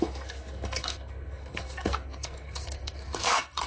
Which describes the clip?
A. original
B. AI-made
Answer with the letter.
B